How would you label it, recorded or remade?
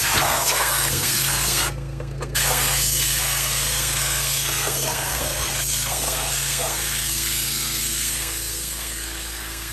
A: remade